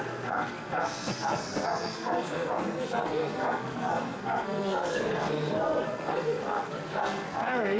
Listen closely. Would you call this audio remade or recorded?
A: remade